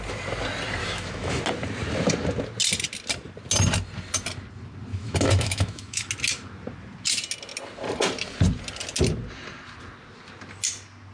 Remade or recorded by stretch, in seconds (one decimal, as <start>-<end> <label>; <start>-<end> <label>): 0.0-0.8 recorded; 0.8-1.4 remade; 1.4-4.9 recorded; 4.9-6.1 remade; 6.1-11.1 recorded